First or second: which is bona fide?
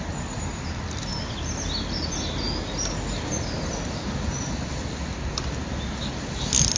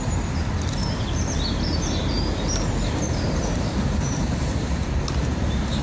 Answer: first